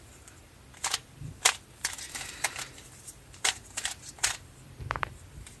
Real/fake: fake